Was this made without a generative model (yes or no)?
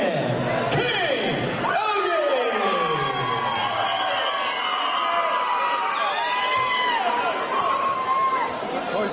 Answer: yes